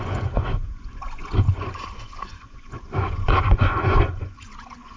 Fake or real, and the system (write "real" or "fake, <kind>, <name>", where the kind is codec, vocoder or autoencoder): fake, vocoder, Vocos